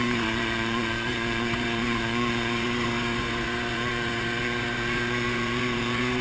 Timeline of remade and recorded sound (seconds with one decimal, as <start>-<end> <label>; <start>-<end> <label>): 0.0-6.2 remade